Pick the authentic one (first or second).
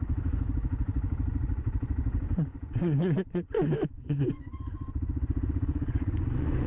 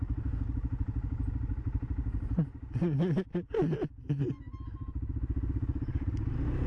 second